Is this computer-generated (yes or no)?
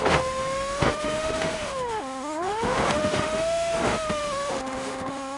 yes